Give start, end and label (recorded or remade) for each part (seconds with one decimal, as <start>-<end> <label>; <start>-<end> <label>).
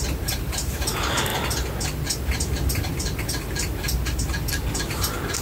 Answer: 0.0-1.3 remade; 1.3-4.5 recorded; 4.5-5.4 remade